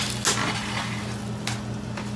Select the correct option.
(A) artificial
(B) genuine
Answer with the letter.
B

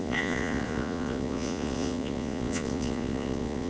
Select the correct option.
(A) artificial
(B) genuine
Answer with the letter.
A